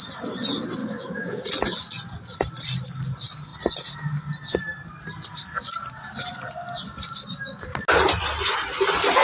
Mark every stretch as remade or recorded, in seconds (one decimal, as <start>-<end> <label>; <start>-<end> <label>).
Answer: 0.0-0.8 recorded; 0.8-1.4 remade; 1.4-9.2 recorded